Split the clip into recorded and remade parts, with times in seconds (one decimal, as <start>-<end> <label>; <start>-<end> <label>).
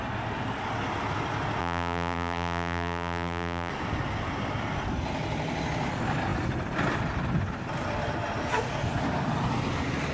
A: 0.0-1.6 recorded; 1.6-3.7 remade; 3.7-10.1 recorded